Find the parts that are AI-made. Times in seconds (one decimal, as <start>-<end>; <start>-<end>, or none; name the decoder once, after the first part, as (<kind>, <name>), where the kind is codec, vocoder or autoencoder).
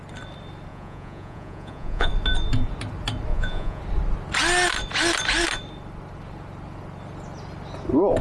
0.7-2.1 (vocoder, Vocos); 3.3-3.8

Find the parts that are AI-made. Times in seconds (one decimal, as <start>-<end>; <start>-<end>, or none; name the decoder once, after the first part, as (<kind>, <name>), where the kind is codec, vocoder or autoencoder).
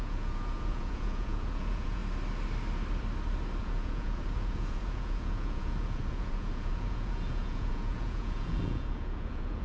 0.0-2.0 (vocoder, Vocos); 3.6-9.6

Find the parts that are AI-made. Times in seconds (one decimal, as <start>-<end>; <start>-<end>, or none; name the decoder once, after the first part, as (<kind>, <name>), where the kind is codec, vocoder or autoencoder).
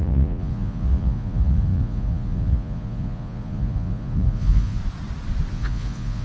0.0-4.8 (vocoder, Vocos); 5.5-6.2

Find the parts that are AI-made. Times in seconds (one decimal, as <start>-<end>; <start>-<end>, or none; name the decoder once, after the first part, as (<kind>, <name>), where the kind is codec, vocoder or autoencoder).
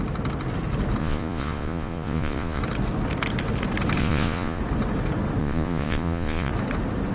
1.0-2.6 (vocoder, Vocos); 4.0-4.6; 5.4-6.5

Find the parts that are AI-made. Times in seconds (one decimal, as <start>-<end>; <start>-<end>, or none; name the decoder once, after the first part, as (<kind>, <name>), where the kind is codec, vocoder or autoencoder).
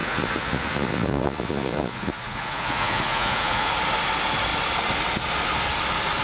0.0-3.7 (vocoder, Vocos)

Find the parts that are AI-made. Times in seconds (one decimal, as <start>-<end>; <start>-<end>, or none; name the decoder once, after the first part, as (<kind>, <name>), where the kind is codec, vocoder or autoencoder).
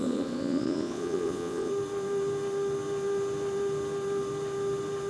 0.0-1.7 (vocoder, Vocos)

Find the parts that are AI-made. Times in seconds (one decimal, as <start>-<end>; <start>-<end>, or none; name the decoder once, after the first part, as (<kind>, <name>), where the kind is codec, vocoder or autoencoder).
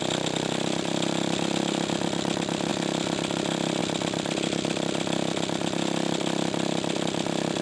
none